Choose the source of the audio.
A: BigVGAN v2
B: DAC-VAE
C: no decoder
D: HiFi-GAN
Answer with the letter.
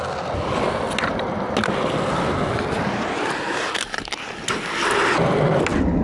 C